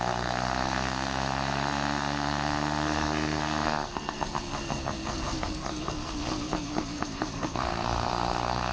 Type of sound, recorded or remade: remade